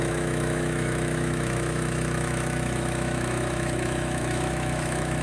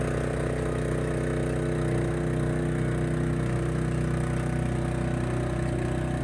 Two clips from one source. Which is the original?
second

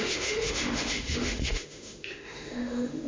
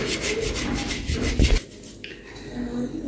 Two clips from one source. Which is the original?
second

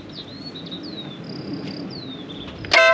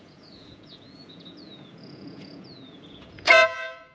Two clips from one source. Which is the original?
first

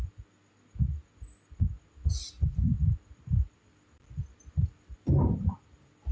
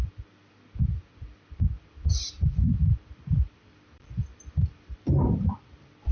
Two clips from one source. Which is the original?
first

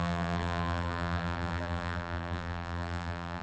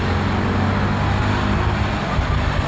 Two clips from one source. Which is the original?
second